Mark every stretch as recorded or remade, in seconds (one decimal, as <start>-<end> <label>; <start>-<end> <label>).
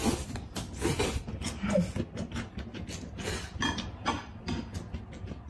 0.0-5.5 recorded